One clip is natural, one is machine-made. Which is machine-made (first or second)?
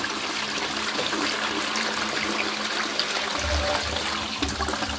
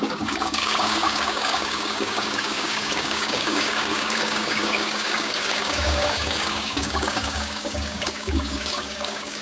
second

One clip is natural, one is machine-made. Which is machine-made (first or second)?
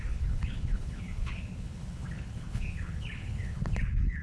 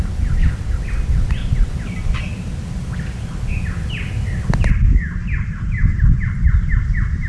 first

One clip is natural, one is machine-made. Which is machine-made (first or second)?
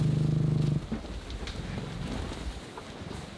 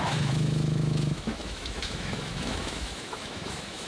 second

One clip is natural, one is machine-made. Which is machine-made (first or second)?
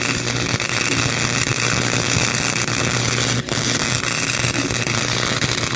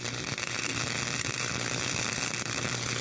second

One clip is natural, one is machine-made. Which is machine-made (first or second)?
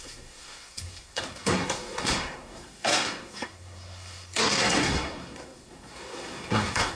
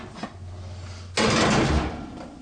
first